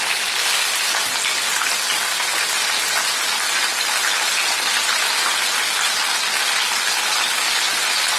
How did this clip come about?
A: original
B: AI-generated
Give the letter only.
A